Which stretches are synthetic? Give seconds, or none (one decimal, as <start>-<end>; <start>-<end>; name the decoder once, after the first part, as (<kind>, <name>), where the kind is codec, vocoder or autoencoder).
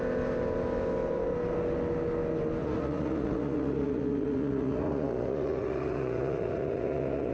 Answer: 2.6-7.3 (vocoder, Vocos)